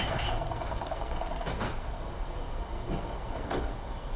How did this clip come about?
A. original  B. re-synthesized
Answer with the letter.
B